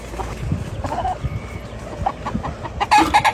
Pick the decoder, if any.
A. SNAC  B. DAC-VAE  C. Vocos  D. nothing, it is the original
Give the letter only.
D